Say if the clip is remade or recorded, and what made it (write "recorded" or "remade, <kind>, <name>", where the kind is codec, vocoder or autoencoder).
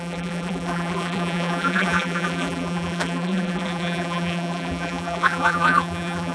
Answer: remade, vocoder, BigVGAN v2